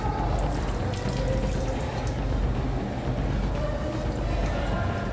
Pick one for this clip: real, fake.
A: real